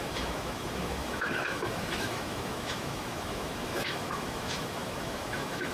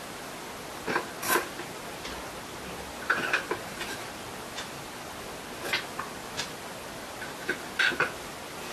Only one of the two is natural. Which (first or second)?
second